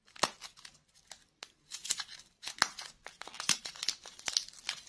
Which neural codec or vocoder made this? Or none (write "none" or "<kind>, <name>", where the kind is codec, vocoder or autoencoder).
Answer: none